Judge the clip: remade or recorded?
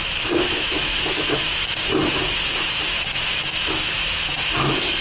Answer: remade